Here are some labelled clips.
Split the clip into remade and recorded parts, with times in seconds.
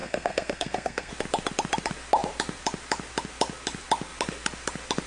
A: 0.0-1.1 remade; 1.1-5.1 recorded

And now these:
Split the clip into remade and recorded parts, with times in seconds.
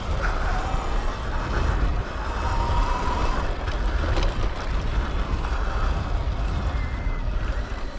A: 0.0-8.0 recorded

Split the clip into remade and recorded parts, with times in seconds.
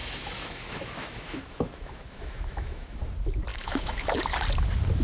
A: 0.0-3.0 remade; 3.0-3.5 recorded; 3.5-4.2 remade; 4.2-5.0 recorded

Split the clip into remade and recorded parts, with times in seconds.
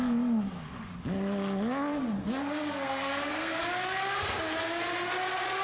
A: 0.0-2.2 recorded; 2.2-3.6 remade; 3.6-5.6 recorded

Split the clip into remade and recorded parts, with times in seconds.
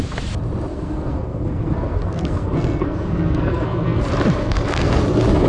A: 0.0-0.7 recorded; 0.7-4.0 remade; 4.0-4.4 recorded; 4.4-5.0 remade; 5.0-5.5 recorded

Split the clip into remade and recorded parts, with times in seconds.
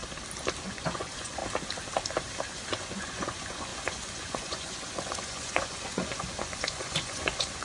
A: 0.0-0.6 recorded; 0.6-1.4 remade; 1.4-2.5 recorded; 2.5-7.6 remade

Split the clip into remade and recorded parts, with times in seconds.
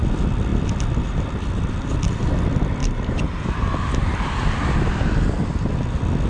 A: 0.0-2.8 recorded; 2.8-4.9 remade; 4.9-6.3 recorded